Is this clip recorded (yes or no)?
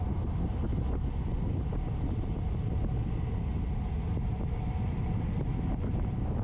yes